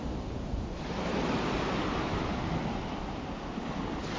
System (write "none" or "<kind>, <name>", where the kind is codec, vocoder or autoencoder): none